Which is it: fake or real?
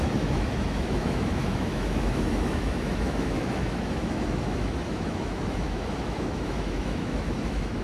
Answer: fake